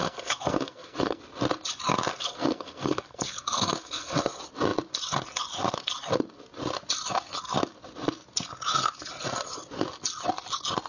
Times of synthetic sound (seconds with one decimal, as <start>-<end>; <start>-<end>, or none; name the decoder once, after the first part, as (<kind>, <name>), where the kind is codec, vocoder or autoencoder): 0.0-1.2 (codec, SNAC); 2.1-4.2